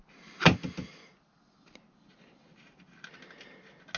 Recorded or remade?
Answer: recorded